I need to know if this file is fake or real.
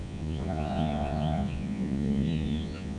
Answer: fake